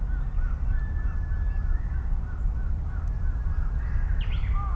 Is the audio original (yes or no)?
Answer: yes